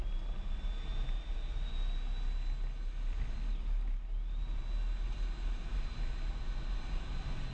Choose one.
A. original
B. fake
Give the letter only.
A